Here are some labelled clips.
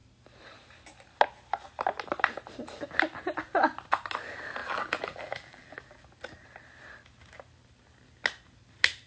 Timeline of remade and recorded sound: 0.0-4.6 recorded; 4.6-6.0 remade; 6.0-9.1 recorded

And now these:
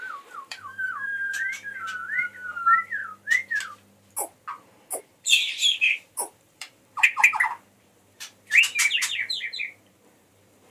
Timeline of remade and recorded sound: 0.0-3.0 remade; 3.0-5.0 recorded; 5.0-10.7 remade

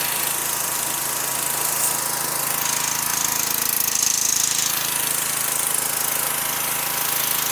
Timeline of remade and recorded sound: 0.0-0.4 recorded; 0.4-1.0 remade; 1.0-3.1 recorded; 3.1-5.7 remade; 5.7-7.5 recorded

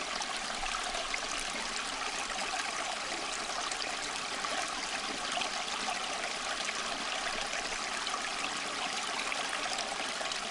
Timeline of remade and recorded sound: 0.0-10.5 recorded

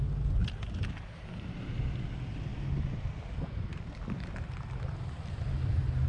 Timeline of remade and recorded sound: 0.0-6.1 recorded

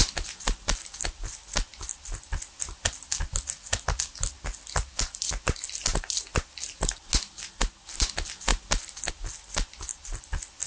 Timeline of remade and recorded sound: 0.0-1.7 remade; 1.7-5.2 recorded; 5.2-5.9 remade; 5.9-8.0 recorded; 8.0-8.5 remade; 8.5-9.1 recorded; 9.1-10.7 remade